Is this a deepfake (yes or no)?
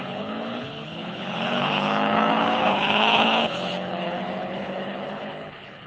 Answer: yes